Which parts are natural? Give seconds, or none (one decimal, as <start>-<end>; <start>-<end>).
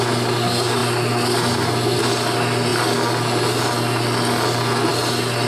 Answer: 0.0-5.5